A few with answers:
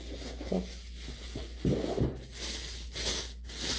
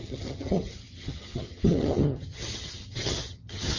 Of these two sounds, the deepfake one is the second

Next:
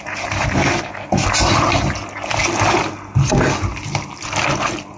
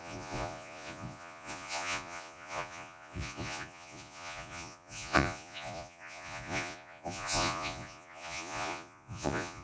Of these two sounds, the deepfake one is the second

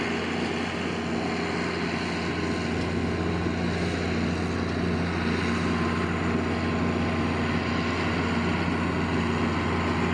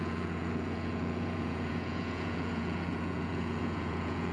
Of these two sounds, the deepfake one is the second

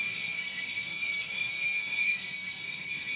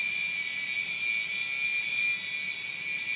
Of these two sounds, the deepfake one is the first